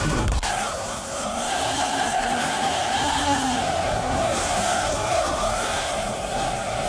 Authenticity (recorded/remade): remade